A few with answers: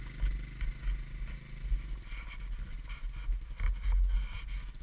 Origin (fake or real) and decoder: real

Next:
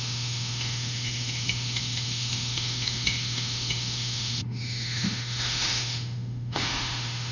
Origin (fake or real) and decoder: fake, autoencoder, DAC-VAE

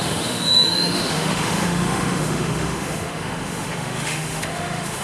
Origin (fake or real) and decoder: fake, autoencoder, DAC-VAE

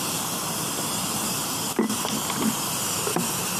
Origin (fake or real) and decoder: real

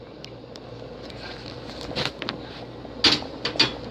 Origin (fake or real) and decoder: real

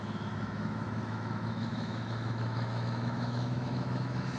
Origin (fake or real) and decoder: fake, autoencoder, DAC-VAE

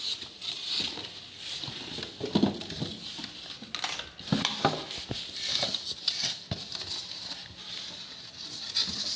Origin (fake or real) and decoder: real